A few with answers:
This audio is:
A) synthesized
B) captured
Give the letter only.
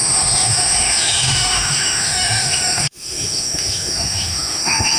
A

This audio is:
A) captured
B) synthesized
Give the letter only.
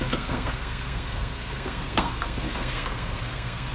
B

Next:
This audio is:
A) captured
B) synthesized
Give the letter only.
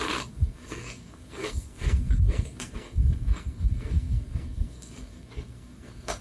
B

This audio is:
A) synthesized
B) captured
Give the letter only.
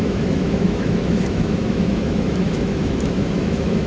A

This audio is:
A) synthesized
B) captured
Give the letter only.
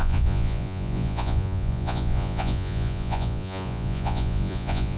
A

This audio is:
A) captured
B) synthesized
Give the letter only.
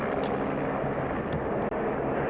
A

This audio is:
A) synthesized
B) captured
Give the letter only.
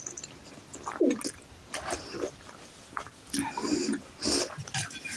B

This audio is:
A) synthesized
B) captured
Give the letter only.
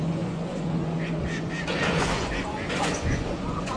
A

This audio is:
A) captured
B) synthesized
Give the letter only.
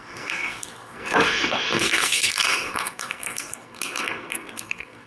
B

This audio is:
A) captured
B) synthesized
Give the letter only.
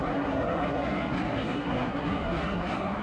B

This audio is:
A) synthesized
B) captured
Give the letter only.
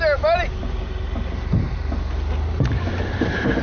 B